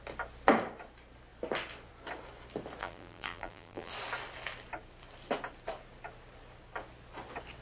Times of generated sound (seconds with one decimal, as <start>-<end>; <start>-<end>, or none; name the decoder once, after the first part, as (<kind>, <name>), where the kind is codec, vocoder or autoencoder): 2.8-3.9 (vocoder, BigVGAN v2)